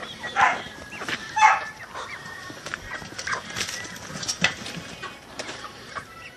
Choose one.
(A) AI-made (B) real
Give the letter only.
A